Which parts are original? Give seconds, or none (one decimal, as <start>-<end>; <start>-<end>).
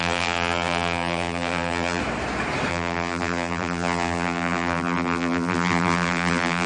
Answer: 2.0-2.7